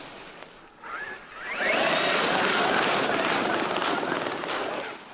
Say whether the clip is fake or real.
real